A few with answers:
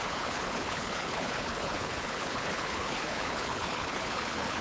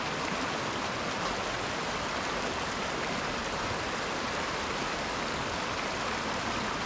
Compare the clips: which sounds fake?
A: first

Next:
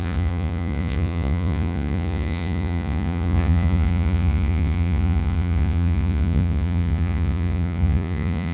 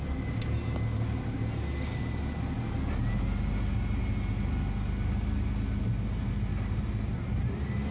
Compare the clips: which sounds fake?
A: first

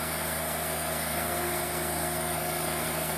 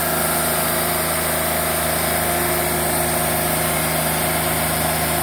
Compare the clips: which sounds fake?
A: first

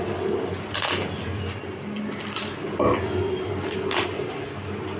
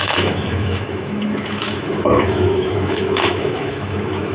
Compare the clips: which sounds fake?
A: second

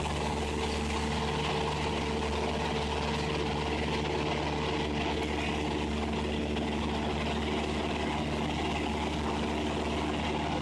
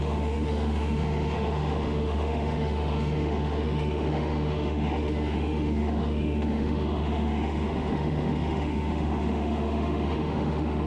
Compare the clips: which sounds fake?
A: second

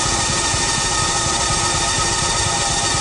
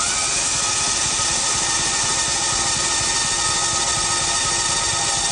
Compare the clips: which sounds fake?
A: first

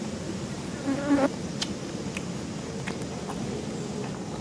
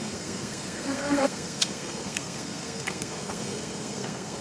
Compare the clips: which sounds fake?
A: second